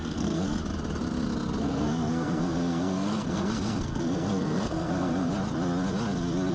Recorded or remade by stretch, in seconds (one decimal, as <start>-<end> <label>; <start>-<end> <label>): 0.0-0.6 remade; 0.6-1.6 recorded; 1.6-5.3 remade; 5.3-6.5 recorded